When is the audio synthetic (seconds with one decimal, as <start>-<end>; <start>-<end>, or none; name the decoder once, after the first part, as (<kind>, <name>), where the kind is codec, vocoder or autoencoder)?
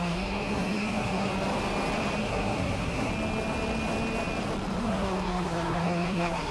0.0-1.3 (codec, SNAC); 2.2-3.1; 4.8-6.5